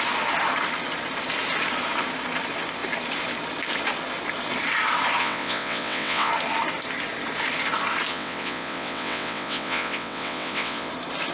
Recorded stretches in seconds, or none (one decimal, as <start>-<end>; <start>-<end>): 0.0-5.2; 6.3-8.1; 10.9-11.3